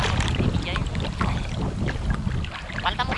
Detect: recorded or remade recorded